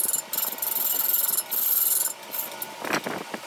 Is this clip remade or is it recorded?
recorded